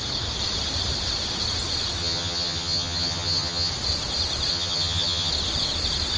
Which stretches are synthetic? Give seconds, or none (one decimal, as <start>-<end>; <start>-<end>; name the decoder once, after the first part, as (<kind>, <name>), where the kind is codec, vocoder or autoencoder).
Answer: 2.0-3.7 (vocoder, HiFi-GAN); 4.5-5.3